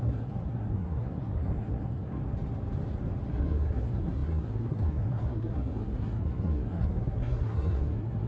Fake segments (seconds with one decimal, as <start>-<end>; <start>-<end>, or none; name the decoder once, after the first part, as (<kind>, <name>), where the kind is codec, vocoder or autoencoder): 0.0-2.2 (codec, SNAC); 3.3-8.3